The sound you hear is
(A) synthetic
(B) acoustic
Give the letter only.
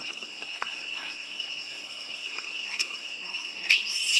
A